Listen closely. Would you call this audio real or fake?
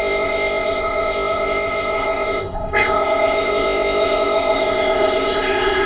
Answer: fake